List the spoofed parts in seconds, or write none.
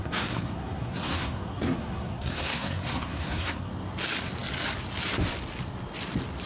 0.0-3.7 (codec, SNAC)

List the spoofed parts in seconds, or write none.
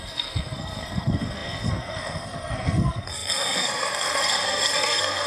0.0-5.3 (codec, SNAC)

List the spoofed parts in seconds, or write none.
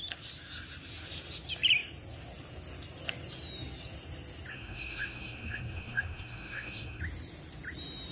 4.5-7.0 (codec, SNAC)